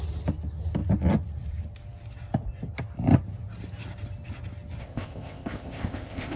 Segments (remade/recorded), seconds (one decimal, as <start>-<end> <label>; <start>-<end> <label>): 0.0-4.8 recorded; 4.8-6.4 remade